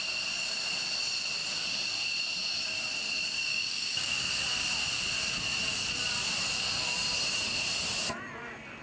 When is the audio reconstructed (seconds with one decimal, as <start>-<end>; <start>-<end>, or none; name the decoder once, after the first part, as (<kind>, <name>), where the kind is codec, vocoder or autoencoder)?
3.5-4.3 (codec, DAC)